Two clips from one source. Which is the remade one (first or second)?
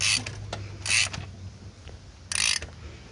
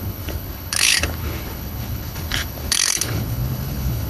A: second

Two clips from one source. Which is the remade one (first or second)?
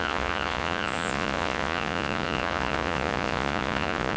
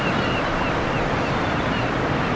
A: first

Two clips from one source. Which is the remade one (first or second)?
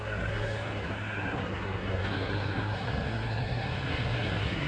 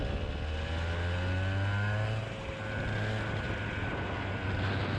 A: first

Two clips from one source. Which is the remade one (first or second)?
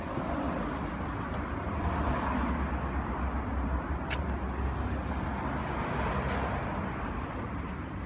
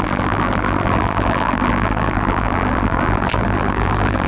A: second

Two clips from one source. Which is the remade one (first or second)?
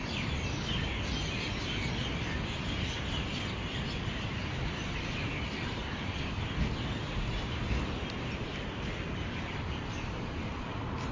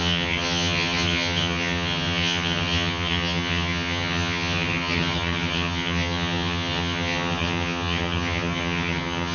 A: second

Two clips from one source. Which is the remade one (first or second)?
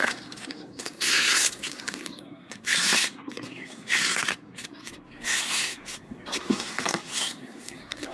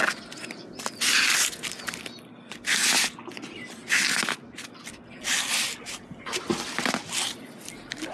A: first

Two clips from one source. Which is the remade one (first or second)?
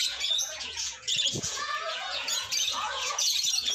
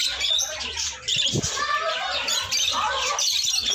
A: first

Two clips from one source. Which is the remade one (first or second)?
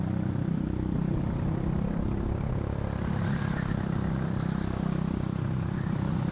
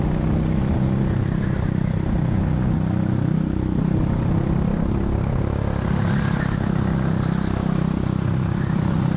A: first